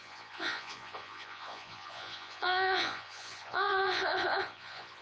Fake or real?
fake